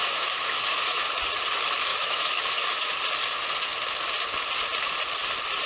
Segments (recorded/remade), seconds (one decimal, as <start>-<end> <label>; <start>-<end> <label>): 0.0-1.1 remade; 1.1-1.9 recorded; 1.9-2.9 remade; 2.9-5.7 recorded

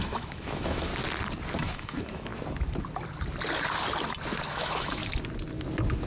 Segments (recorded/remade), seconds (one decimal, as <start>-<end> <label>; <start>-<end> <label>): 0.0-0.9 remade; 0.9-1.6 recorded; 1.6-2.3 remade; 2.3-4.5 recorded; 4.5-5.0 remade; 5.0-6.1 recorded